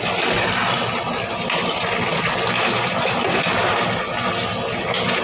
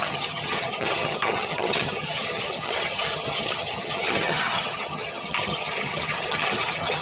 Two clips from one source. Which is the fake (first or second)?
second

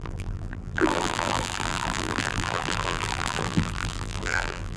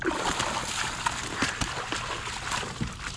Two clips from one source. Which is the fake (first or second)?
first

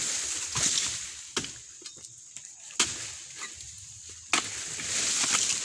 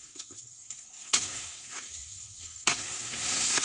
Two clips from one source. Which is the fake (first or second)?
second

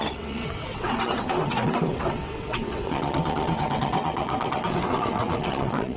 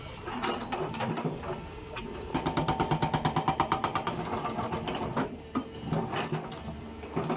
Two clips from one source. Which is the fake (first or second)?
first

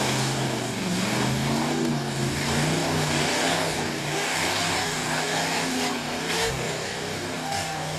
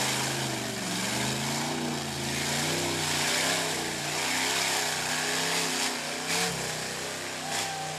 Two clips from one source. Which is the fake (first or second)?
first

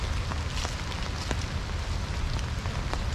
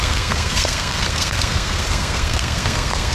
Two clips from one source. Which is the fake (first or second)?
second